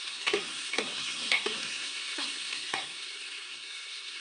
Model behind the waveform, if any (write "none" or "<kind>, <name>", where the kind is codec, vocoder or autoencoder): codec, SNAC